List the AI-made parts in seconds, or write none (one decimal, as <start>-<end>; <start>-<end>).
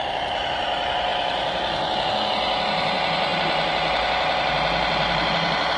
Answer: none